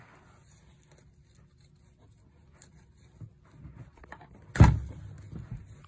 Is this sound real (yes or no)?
yes